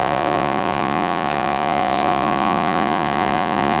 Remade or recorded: remade